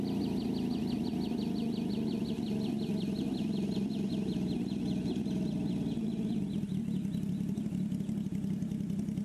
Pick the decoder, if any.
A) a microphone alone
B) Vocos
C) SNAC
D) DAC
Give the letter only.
A